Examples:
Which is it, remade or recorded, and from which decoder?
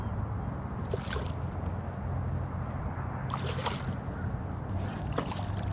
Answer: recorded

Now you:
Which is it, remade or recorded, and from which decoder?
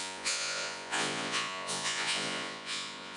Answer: remade, vocoder, Vocos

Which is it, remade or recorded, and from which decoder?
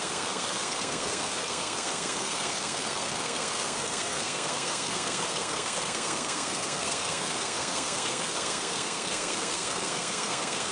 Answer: remade, codec, SNAC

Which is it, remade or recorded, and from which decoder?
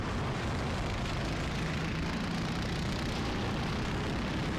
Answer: recorded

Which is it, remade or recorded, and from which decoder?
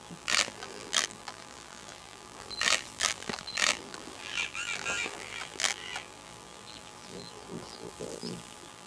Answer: remade, vocoder, BigVGAN v2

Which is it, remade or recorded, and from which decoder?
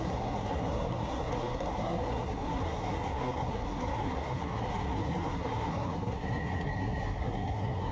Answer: remade, codec, SNAC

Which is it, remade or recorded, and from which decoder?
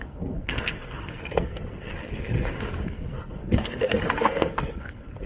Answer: remade, codec, SNAC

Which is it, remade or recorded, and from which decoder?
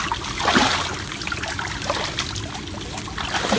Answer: recorded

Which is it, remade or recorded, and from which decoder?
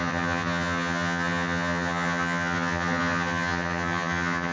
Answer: remade, vocoder, HiFi-GAN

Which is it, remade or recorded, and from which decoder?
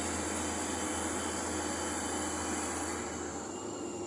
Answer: recorded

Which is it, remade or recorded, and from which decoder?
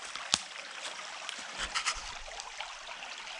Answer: remade, vocoder, BigVGAN v2